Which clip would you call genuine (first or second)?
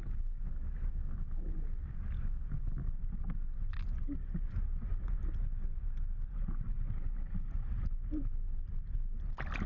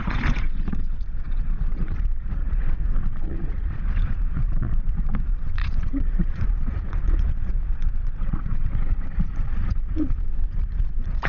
first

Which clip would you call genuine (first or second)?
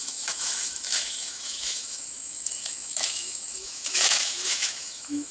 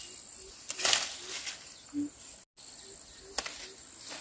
second